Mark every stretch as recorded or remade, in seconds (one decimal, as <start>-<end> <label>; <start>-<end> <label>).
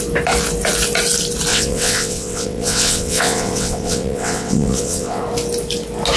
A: 0.0-1.5 recorded; 1.5-5.2 remade; 5.2-6.2 recorded